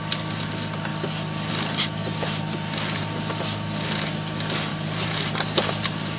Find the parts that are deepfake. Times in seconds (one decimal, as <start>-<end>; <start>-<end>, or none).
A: 4.7-5.3